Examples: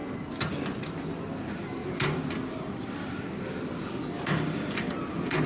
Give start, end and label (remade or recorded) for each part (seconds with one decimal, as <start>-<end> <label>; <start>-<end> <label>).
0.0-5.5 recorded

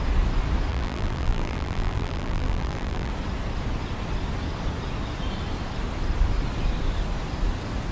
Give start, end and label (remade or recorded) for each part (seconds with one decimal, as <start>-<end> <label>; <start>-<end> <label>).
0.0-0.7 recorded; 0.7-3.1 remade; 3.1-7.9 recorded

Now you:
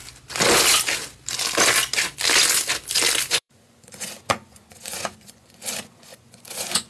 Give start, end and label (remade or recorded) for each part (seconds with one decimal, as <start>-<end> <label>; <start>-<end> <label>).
0.0-3.3 recorded; 3.3-6.9 remade